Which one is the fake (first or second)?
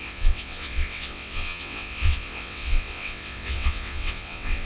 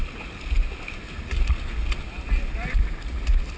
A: first